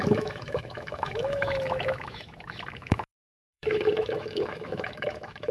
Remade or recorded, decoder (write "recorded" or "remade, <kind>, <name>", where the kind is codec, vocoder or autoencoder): remade, autoencoder, DAC-VAE